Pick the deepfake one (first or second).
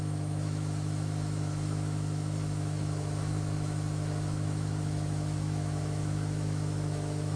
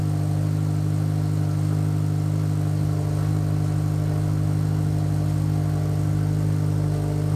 first